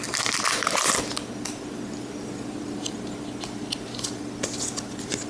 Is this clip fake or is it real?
real